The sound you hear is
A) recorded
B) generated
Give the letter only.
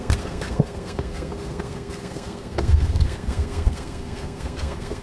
B